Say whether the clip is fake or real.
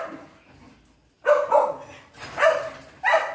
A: real